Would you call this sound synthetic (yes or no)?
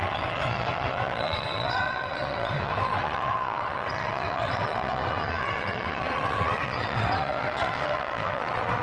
yes